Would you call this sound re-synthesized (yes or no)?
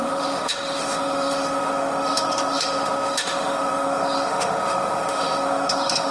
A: yes